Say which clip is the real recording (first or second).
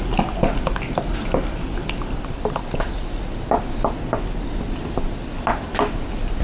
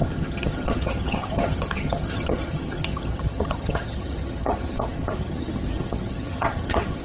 first